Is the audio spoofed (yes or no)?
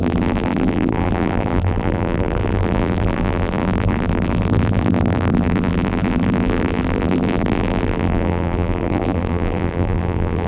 yes